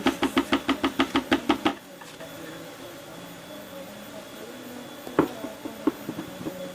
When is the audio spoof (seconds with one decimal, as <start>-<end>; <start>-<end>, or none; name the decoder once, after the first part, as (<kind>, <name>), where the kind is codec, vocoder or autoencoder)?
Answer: none